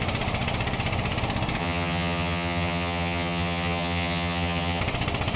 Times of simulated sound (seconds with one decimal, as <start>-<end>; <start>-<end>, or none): 1.6-4.8